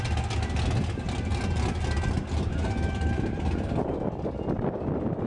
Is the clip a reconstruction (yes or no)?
no